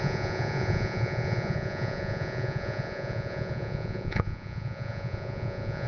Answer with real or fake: fake